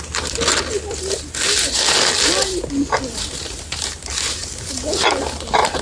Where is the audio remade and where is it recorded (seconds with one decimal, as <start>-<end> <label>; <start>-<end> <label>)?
0.0-0.5 remade; 0.5-2.7 recorded; 2.7-5.8 remade